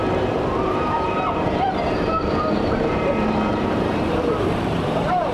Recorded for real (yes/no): no